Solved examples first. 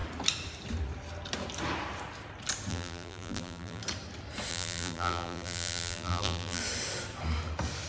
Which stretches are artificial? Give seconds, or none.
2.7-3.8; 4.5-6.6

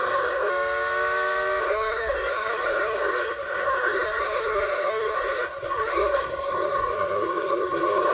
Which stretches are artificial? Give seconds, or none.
0.0-0.5; 1.6-8.1

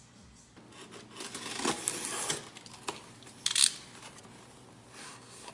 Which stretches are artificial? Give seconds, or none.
5.0-5.5

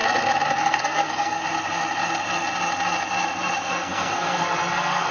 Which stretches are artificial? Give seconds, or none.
0.6-1.4; 3.6-5.1

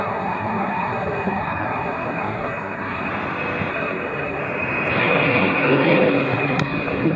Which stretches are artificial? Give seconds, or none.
0.0-3.1; 3.7-4.4; 5.0-7.2